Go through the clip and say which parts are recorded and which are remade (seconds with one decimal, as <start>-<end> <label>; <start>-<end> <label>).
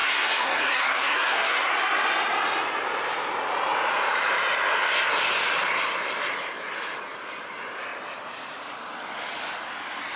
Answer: 0.0-1.7 remade; 1.7-10.2 recorded